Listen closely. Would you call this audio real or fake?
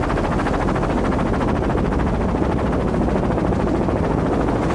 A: real